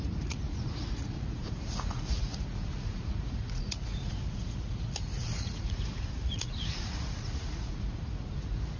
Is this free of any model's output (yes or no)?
no